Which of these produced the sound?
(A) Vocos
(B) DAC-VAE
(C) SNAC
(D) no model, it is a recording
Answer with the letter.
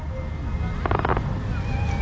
D